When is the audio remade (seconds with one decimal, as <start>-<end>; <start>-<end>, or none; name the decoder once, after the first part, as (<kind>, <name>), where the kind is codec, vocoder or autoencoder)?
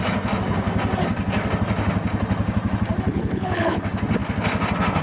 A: 3.1-3.8 (codec, HILCodec)